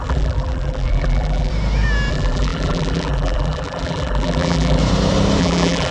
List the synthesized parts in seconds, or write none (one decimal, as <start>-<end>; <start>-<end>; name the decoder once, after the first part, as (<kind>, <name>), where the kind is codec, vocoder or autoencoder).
0.0-1.5 (vocoder, BigVGAN v2); 2.1-4.8; 5.4-5.9